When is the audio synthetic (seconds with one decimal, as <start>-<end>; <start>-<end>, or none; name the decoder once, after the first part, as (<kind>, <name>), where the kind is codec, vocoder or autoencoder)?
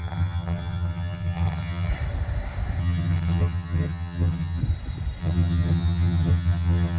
0.0-1.9 (vocoder, HiFi-GAN); 2.8-4.6; 5.2-7.0